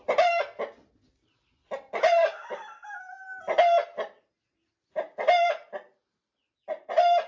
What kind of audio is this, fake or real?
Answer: real